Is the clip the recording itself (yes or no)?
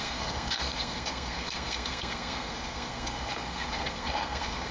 no